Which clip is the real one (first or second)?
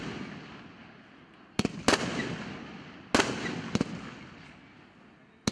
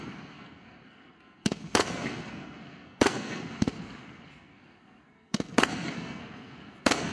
first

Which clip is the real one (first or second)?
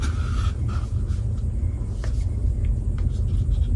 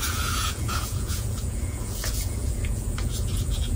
first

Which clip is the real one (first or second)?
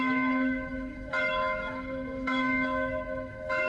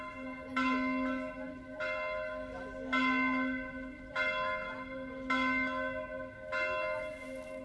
second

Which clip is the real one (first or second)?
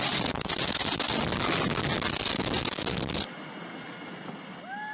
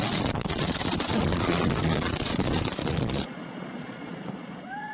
first